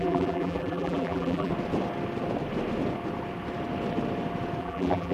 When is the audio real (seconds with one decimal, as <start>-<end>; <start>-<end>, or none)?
1.5-4.6